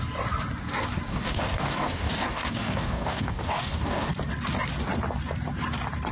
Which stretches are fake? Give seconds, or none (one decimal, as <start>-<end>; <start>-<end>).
1.1-4.1